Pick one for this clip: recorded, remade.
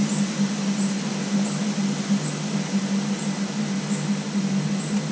recorded